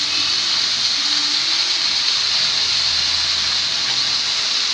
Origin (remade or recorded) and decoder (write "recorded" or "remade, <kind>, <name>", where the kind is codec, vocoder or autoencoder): recorded